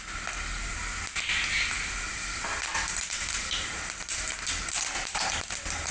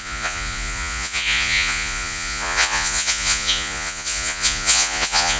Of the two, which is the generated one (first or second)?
second